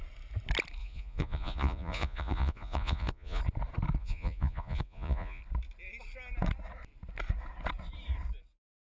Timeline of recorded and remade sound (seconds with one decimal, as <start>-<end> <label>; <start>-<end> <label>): 0.0-0.8 recorded; 0.8-3.4 remade; 3.4-4.0 recorded; 4.0-5.4 remade; 5.4-8.9 recorded

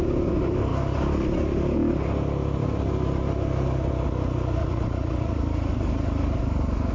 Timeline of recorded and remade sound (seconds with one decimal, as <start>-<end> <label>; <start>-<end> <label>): 0.0-4.6 recorded; 4.6-5.4 remade; 5.4-6.9 recorded

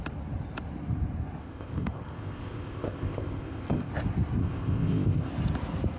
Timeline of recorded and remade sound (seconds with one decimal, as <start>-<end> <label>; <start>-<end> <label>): 0.0-1.4 recorded; 1.4-3.9 remade; 3.9-4.4 recorded; 4.4-5.3 remade; 5.3-6.0 recorded